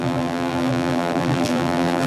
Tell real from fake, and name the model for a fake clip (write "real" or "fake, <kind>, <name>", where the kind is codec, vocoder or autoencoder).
fake, vocoder, BigVGAN v2